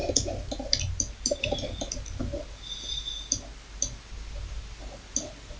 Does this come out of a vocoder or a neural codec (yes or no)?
no